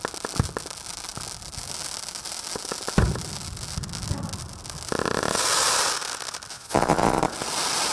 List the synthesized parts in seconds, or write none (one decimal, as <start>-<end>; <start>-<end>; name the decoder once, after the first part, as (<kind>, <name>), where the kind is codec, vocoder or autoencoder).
6.5-7.2 (vocoder, Vocos)